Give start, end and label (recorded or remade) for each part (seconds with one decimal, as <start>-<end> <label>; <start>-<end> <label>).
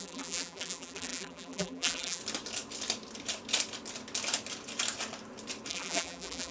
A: 0.0-2.2 remade; 2.2-5.7 recorded; 5.7-6.5 remade